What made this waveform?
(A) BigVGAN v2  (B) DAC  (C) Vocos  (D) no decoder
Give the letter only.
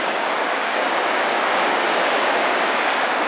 B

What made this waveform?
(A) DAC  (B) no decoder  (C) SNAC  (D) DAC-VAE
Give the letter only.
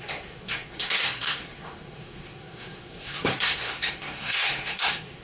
C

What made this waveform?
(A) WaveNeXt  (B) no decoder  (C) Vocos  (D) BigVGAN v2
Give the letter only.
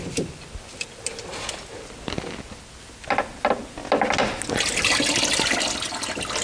B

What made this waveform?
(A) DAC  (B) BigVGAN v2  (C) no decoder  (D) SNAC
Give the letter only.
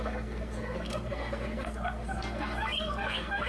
D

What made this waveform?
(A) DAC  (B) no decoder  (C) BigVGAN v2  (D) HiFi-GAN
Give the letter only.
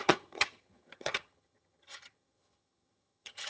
D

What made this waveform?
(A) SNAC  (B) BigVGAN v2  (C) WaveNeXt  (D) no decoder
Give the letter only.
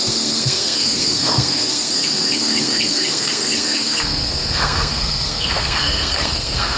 A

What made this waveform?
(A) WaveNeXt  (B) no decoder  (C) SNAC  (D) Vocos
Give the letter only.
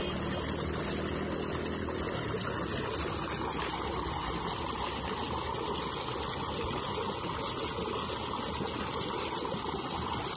B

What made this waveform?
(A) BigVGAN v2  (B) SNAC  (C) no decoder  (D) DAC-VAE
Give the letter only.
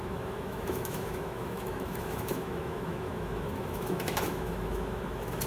D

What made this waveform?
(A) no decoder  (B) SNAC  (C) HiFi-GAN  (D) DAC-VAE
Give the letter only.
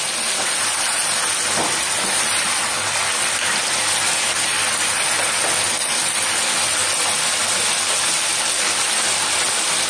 A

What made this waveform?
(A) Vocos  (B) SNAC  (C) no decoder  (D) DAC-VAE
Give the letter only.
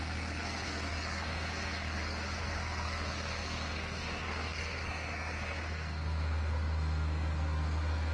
B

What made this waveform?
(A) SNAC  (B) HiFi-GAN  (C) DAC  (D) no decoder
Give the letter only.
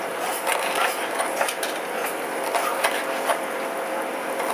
D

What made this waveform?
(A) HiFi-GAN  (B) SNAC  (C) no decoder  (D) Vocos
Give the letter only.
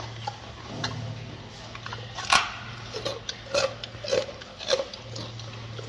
C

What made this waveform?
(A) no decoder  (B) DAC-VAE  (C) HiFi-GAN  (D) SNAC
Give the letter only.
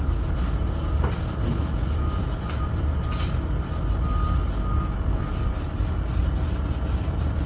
A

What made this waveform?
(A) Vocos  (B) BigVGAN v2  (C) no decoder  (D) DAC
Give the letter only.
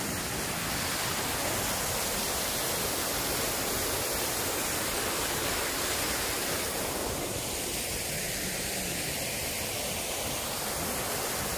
C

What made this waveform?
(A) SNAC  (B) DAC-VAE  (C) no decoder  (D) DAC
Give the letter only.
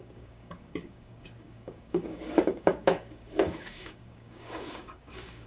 D